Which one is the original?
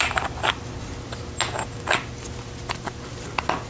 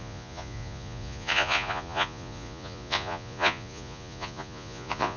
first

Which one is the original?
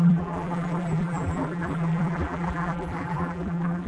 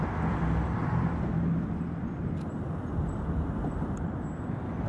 second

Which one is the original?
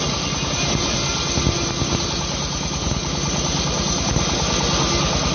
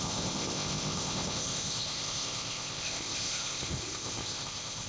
first